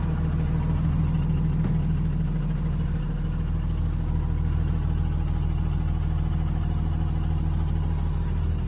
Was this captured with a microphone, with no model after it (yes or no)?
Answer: yes